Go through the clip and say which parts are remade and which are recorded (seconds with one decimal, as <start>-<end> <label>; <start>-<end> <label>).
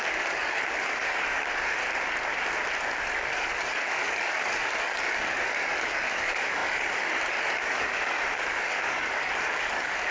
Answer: 0.0-1.8 remade; 1.8-3.0 recorded; 3.0-10.1 remade